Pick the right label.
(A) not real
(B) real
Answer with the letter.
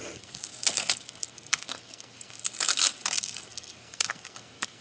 A